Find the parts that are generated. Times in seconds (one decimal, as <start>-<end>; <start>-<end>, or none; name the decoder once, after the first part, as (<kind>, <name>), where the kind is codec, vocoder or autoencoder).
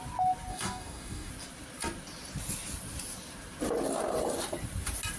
0.5-1.3 (codec, DAC)